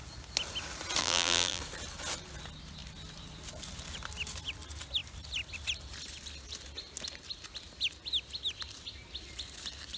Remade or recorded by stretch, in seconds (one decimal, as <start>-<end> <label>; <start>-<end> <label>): 0.0-1.0 recorded; 1.0-1.6 remade; 1.6-10.0 recorded